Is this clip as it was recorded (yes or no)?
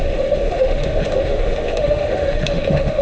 no